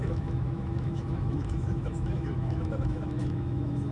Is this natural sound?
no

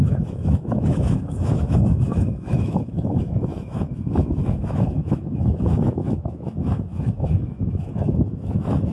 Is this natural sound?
no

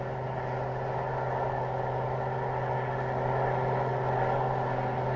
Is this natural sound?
yes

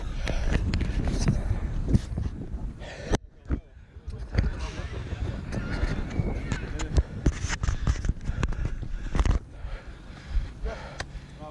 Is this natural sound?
yes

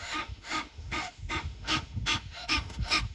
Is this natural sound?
no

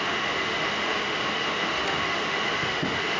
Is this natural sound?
no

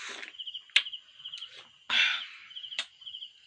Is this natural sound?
yes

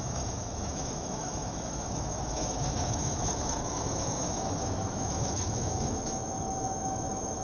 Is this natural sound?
no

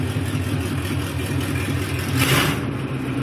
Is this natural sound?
yes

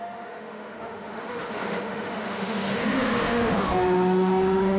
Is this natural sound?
no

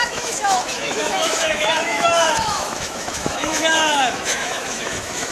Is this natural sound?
no